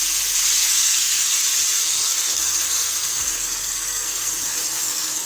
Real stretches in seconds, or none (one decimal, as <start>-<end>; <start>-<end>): 0.0-0.6; 1.4-1.8